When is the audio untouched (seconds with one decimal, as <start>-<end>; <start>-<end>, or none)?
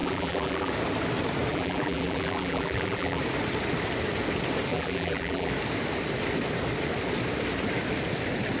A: 0.7-1.5; 3.2-4.7; 5.5-8.6